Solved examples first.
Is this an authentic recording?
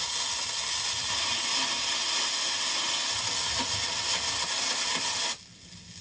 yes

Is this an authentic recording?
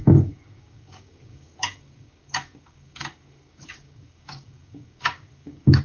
no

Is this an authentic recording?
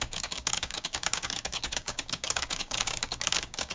no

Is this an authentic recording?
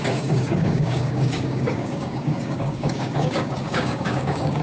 no